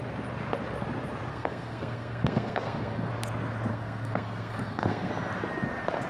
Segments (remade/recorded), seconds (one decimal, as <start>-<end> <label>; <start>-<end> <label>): 0.0-1.3 recorded; 1.3-3.1 remade; 3.1-3.7 recorded; 3.7-5.1 remade; 5.1-6.1 recorded